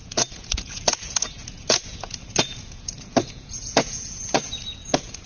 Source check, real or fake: fake